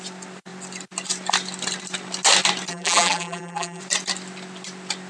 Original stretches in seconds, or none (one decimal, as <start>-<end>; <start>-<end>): 0.0-2.7; 3.8-5.1